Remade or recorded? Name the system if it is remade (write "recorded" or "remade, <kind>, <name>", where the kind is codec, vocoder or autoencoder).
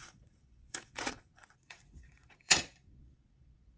remade, vocoder, Vocos